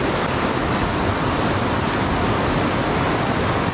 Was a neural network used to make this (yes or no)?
no